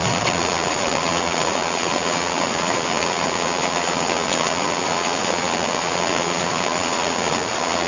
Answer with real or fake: fake